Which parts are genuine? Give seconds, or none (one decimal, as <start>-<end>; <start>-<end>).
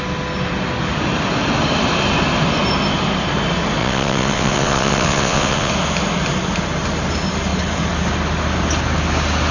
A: 0.0-3.8; 5.7-9.5